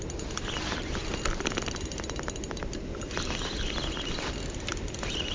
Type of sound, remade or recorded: recorded